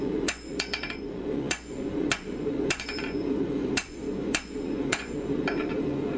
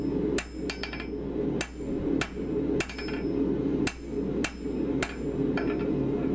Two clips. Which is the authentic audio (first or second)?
second